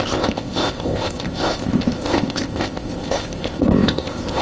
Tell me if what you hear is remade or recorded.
remade